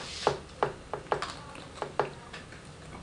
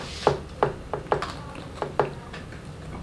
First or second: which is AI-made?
second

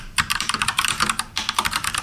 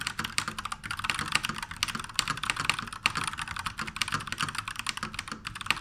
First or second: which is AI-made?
first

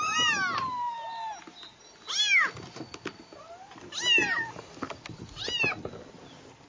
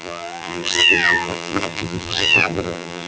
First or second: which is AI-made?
second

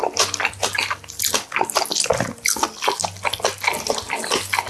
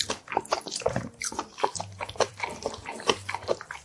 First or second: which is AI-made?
second